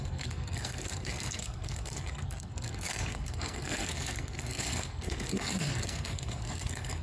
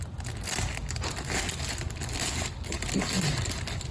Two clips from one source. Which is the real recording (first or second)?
second